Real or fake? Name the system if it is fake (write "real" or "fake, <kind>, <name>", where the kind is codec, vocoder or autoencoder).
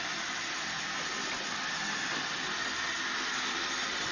real